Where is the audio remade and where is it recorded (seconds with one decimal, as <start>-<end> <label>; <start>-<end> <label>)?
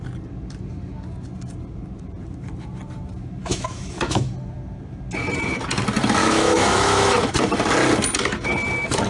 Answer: 0.0-3.4 recorded; 3.4-4.3 remade; 4.3-6.2 recorded; 6.2-7.3 remade; 7.3-9.1 recorded